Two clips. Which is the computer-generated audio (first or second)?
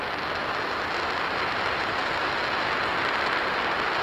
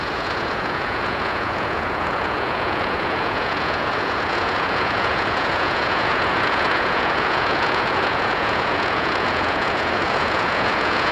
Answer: second